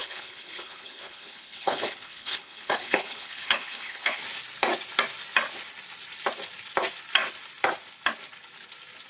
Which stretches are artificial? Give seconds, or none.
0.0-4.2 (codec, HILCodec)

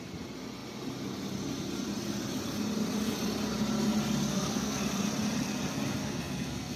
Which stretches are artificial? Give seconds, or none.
4.3-4.8 (codec, SNAC); 6.0-6.8

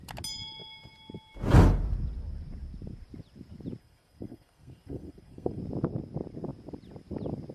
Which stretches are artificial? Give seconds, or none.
3.8-5.6 (codec, SNAC)

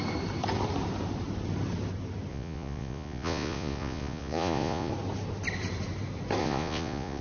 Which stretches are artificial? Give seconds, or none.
2.3-4.9 (vocoder, Vocos); 6.4-7.2

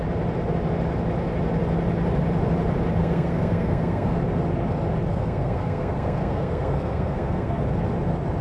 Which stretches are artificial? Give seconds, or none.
3.0-4.2 (codec, SNAC); 5.1-7.6

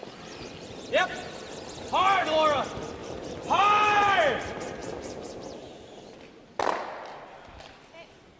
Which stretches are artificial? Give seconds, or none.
3.0-4.2 (vocoder, BigVGAN v2); 4.8-6.6